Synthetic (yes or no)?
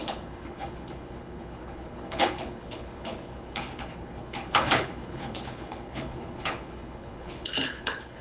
yes